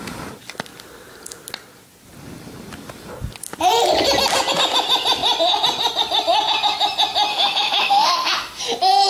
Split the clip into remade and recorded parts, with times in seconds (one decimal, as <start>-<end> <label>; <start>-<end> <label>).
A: 0.0-7.3 recorded; 7.3-8.6 remade; 8.6-9.1 recorded